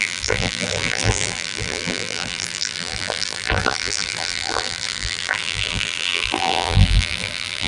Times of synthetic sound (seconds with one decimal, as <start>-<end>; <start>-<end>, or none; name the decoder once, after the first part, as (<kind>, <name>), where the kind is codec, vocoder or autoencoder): 0.0-7.7 (vocoder, BigVGAN v2)